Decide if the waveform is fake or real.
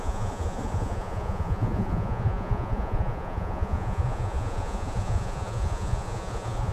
fake